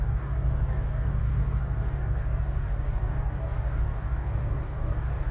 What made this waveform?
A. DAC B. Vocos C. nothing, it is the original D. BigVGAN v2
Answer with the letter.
A